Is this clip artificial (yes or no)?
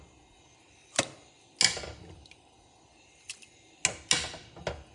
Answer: no